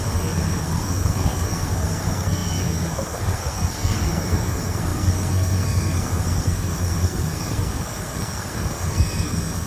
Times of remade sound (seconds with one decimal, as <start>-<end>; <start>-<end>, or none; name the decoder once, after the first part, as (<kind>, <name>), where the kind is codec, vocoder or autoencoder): 0.0-9.7 (codec, SNAC)